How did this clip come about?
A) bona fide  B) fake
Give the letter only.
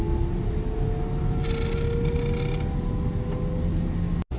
A